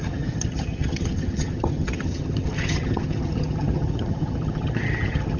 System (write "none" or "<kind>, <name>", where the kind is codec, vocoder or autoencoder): vocoder, HiFi-GAN